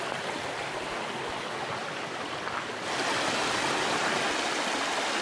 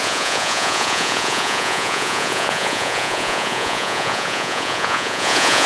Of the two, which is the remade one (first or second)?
second